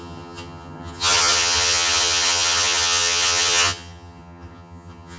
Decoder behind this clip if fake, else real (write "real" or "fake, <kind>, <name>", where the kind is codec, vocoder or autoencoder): fake, vocoder, HiFi-GAN